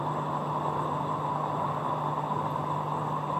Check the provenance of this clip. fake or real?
fake